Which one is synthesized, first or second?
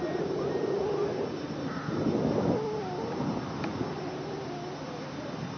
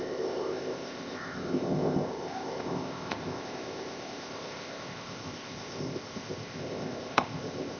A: second